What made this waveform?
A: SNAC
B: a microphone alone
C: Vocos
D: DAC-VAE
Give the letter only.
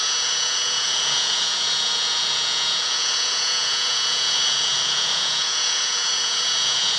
C